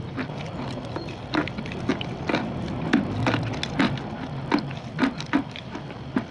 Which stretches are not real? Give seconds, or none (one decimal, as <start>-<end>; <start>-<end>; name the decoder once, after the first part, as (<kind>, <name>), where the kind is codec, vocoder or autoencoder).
none